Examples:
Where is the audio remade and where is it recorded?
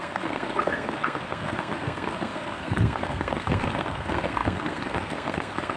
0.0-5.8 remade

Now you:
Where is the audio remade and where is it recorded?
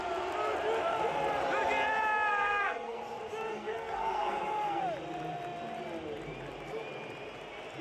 0.0-2.3 recorded; 2.3-3.0 remade; 3.0-3.5 recorded; 3.5-4.8 remade; 4.8-7.8 recorded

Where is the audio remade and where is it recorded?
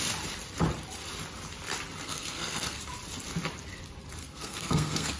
0.0-2.0 recorded; 2.0-2.8 remade; 2.8-4.2 recorded; 4.2-5.2 remade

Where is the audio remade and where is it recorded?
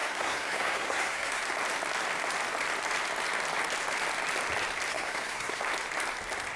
0.0-1.4 remade; 1.4-4.9 recorded; 4.9-5.6 remade; 5.6-6.6 recorded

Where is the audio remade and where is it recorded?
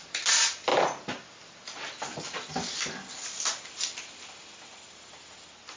0.0-5.8 recorded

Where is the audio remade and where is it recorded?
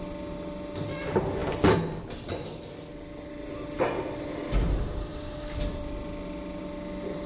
0.0-7.3 recorded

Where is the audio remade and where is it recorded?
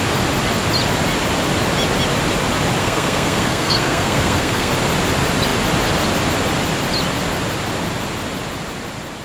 0.0-2.8 recorded; 2.8-4.7 remade; 4.7-9.2 recorded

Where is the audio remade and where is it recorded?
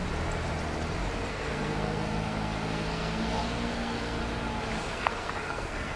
0.0-1.3 recorded; 1.3-4.2 remade; 4.2-4.9 recorded; 4.9-6.0 remade